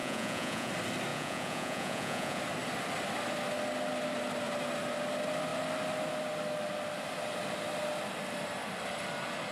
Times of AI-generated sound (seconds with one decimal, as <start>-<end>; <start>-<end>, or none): 0.0-0.7; 1.1-2.4